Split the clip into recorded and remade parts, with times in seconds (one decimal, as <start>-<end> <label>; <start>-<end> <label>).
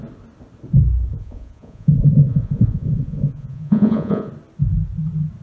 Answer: 0.0-1.1 recorded; 1.1-4.3 remade; 4.3-5.4 recorded